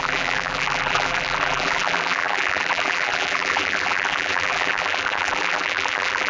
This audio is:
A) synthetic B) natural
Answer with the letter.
A